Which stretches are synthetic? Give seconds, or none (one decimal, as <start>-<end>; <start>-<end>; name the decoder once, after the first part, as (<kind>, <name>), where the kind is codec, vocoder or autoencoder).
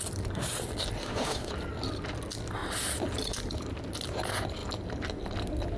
1.0-1.5 (autoencoder, DAC-VAE)